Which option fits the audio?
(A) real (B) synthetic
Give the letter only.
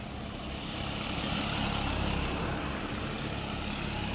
A